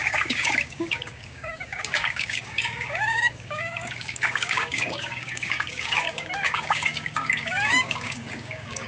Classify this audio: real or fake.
fake